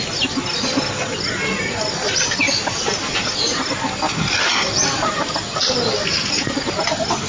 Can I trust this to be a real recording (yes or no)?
yes